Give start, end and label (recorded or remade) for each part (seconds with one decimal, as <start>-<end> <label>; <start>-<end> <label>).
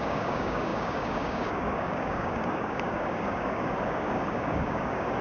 0.0-5.2 remade